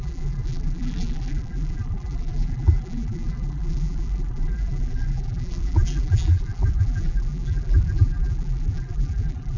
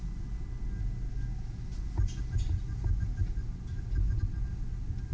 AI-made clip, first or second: first